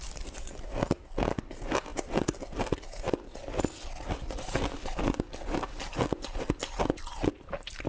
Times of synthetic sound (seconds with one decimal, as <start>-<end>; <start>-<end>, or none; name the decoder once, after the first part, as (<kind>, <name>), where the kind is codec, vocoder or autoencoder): none